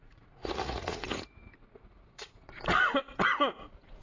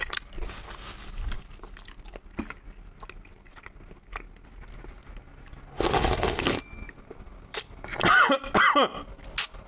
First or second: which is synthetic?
first